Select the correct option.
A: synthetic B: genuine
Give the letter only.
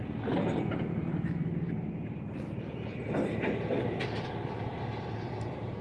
B